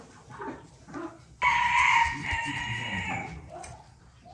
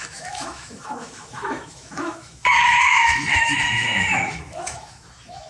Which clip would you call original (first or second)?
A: first